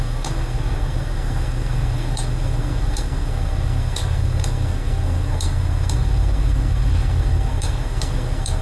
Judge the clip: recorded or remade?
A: remade